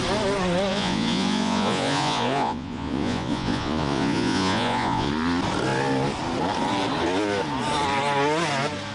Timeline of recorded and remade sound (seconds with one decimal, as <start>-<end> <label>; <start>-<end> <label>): 0.0-0.7 recorded; 0.7-5.1 remade; 5.1-8.9 recorded